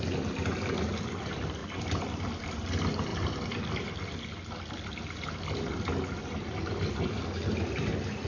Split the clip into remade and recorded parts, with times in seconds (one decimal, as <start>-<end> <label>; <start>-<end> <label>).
0.0-1.6 remade; 1.6-2.2 recorded; 2.2-3.1 remade; 3.1-6.7 recorded; 6.7-8.3 remade